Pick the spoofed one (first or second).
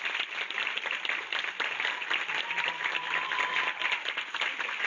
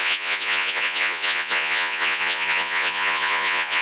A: second